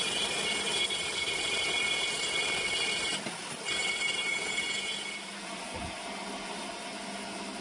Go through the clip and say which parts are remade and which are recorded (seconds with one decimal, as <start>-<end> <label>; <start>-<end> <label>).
0.0-4.3 recorded; 4.3-5.1 remade; 5.1-7.6 recorded